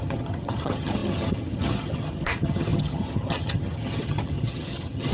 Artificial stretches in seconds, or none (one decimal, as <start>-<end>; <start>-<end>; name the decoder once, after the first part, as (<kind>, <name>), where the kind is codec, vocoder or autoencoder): 0.0-5.1 (vocoder, HiFi-GAN)